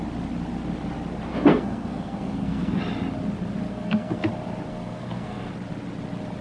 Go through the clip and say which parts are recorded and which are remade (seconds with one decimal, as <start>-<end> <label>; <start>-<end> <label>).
0.0-1.3 recorded; 1.3-2.8 remade; 2.8-3.7 recorded; 3.7-4.3 remade; 4.3-4.7 recorded; 4.7-5.5 remade; 5.5-6.4 recorded